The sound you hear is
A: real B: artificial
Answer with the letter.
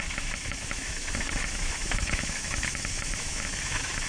B